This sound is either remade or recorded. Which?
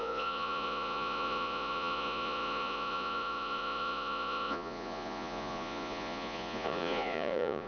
remade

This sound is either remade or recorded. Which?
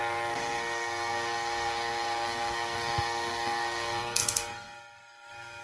remade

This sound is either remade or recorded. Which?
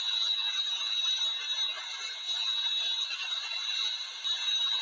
recorded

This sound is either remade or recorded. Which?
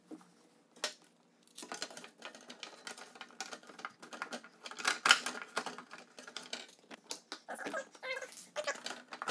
recorded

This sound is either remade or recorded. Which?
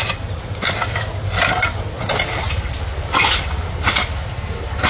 recorded